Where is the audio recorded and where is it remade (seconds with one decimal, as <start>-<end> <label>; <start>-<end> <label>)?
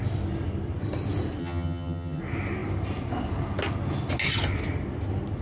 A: 0.0-1.4 recorded; 1.4-2.2 remade; 2.2-5.4 recorded